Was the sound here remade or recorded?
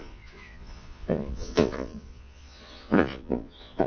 remade